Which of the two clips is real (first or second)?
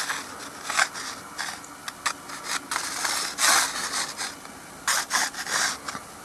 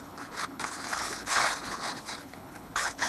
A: first